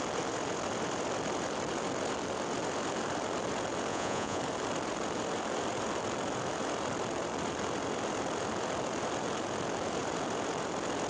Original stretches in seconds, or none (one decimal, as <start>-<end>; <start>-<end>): 0.0-3.9; 4.4-11.1